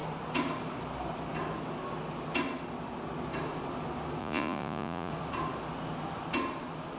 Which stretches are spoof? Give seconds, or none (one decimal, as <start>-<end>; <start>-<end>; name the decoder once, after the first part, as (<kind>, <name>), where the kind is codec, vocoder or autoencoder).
4.2-5.1 (vocoder, Vocos)